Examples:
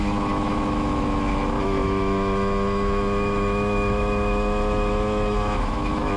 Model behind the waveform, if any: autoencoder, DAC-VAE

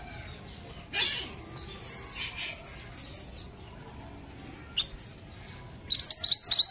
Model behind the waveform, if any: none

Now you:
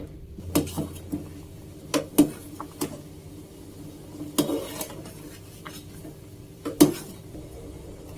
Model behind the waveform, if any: none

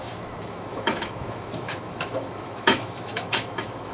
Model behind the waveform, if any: autoencoder, DAC-VAE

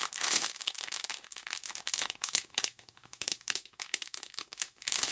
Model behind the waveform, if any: autoencoder, DAC-VAE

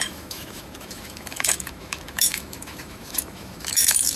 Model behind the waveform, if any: autoencoder, DAC-VAE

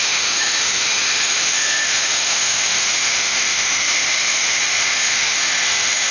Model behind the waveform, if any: autoencoder, DAC-VAE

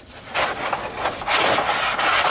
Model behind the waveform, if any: none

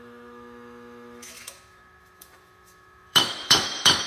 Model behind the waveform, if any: autoencoder, DAC-VAE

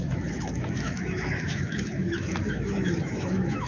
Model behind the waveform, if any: autoencoder, DAC-VAE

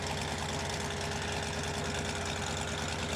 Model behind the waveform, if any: none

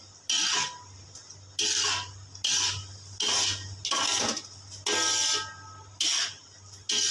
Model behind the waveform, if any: none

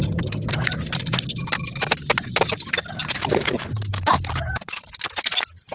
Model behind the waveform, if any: none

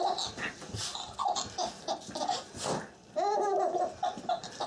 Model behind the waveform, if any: none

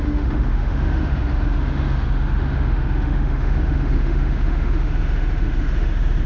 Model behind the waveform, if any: autoencoder, DAC-VAE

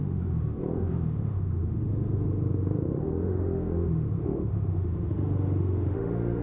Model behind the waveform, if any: autoencoder, DAC-VAE